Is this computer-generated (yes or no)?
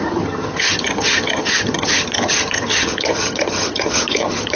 yes